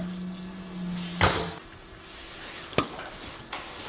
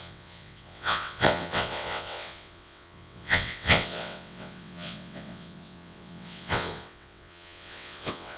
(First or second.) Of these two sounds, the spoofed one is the second